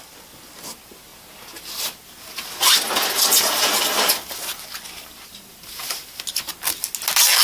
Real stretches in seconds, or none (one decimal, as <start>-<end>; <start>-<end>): 0.0-7.4